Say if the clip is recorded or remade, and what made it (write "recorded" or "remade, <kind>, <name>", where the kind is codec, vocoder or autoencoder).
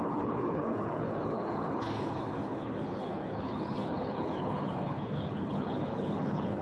remade, codec, HILCodec